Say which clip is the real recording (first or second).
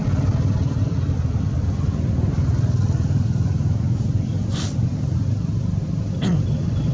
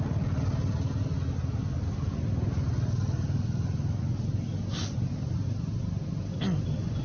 second